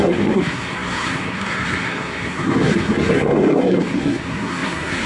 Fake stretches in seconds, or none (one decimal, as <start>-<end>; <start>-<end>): 0.0-5.1